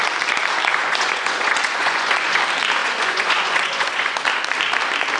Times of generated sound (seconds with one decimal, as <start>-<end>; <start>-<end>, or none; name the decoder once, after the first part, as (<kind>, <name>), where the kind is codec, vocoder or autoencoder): 0.7-2.4 (vocoder, Vocos); 2.8-4.2